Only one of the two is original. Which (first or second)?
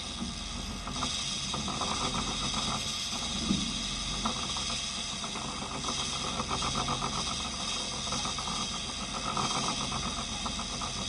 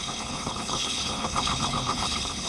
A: first